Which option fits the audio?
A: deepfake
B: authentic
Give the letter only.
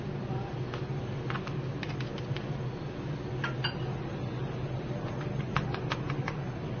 B